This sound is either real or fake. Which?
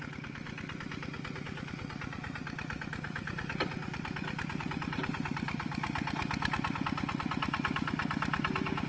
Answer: real